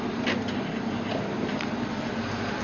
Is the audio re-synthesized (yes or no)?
no